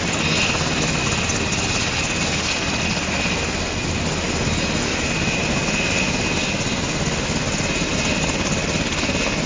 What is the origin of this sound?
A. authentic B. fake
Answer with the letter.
A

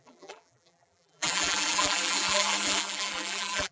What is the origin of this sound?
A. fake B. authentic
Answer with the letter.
A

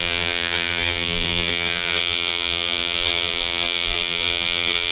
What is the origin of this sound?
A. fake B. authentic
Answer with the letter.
A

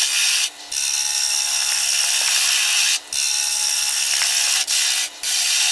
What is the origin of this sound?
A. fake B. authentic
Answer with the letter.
B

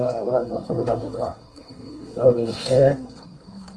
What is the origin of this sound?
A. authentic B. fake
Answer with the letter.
B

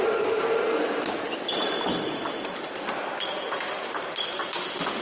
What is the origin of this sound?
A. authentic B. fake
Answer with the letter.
A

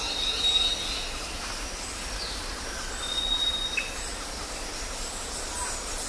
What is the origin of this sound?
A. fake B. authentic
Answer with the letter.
B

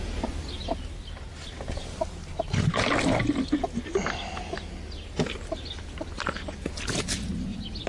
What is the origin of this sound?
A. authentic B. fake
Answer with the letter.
A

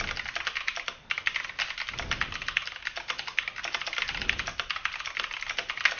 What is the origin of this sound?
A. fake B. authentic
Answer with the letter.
B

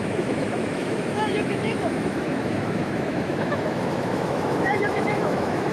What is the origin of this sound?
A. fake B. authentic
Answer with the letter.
A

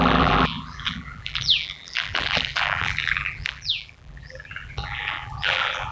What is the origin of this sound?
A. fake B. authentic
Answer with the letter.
A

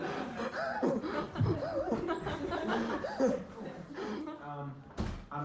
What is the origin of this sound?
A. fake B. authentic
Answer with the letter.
B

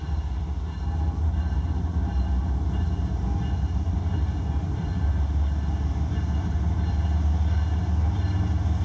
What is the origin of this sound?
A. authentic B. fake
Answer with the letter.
A